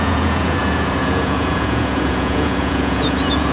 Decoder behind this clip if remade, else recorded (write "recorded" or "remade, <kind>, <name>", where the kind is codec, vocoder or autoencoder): remade, vocoder, Vocos